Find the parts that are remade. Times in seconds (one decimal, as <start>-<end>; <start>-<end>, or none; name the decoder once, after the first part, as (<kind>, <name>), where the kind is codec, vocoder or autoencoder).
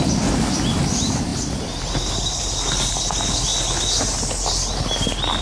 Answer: none